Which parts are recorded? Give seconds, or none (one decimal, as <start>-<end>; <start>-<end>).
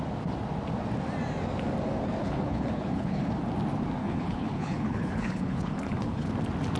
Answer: 0.0-2.2; 3.2-4.0; 6.3-6.8